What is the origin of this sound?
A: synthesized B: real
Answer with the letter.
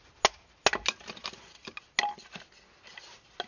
B